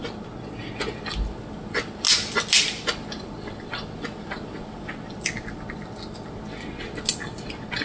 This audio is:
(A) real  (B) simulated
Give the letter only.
A